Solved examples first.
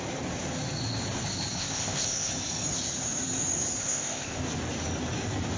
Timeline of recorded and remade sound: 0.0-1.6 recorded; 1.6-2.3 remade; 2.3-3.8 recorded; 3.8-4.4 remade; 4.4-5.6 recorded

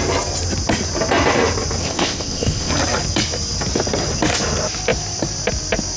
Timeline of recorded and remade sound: 0.0-1.8 recorded; 1.8-2.7 remade; 2.7-6.0 recorded

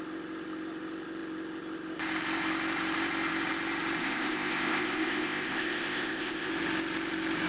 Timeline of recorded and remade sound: 0.0-4.0 recorded; 4.0-6.5 remade; 6.5-7.5 recorded